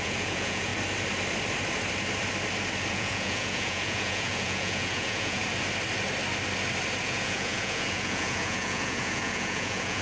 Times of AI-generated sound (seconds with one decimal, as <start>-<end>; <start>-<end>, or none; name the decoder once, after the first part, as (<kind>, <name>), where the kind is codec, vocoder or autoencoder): 0.0-0.7 (vocoder, Vocos); 2.9-5.4; 7.0-10.0

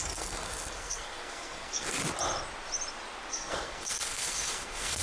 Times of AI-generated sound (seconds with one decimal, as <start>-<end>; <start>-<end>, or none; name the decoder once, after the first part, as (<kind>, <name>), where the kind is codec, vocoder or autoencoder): 0.0-2.0 (codec, SNAC); 3.3-5.0

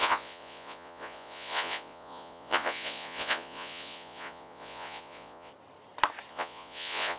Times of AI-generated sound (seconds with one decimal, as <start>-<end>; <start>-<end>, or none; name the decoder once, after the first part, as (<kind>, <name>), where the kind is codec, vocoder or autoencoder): 0.0-5.5 (vocoder, Vocos); 6.3-7.2

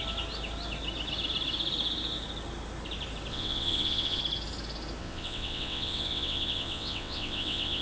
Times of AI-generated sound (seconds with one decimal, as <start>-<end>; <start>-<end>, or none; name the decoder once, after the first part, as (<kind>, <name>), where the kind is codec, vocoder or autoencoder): 3.3-4.2 (vocoder, WaveNeXt); 5.0-7.8

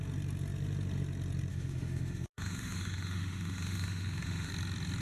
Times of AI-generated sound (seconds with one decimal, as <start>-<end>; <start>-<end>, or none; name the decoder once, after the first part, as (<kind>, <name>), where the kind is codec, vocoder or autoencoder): 1.5-4.5 (autoencoder, DAC-VAE)